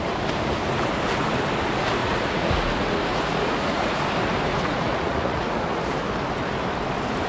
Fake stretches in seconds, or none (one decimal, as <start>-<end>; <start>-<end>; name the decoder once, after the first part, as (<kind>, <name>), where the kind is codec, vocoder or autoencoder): 2.0-4.0 (vocoder, Vocos); 4.5-5.8